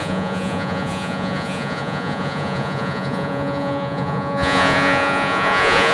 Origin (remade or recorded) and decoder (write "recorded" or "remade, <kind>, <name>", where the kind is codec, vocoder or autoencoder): remade, vocoder, Vocos